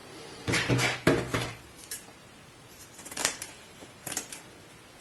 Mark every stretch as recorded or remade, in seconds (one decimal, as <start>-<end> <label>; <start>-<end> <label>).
0.0-0.7 remade; 0.7-1.3 recorded; 1.3-4.3 remade; 4.3-5.0 recorded